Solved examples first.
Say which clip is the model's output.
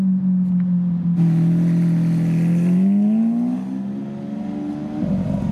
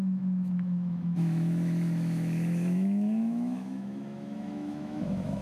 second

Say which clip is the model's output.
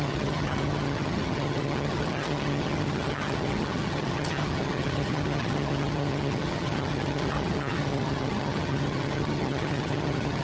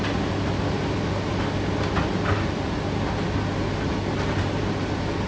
first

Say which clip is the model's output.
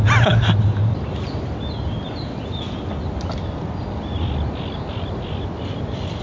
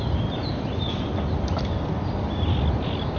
second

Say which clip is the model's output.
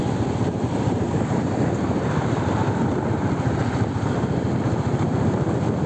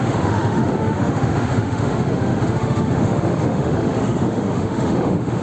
second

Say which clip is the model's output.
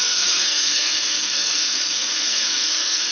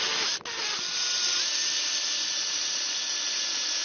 first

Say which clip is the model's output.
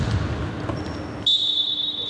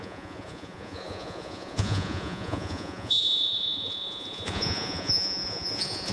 second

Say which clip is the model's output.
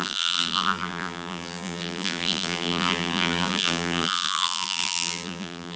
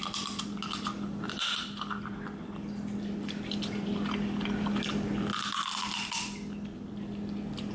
first